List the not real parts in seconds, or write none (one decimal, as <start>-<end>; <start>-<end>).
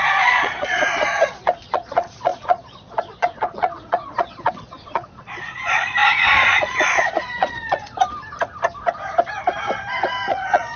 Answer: 0.0-7.8; 10.3-10.8